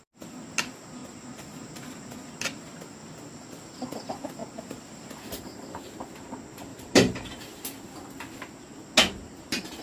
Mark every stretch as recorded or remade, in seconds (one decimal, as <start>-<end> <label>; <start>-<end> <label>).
0.0-1.0 recorded; 1.0-2.3 remade; 2.3-6.7 recorded; 6.7-7.4 remade; 7.4-9.8 recorded